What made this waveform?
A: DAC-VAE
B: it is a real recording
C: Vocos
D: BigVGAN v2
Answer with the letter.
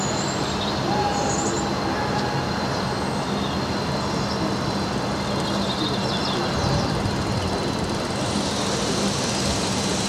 B